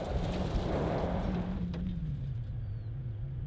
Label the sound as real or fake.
real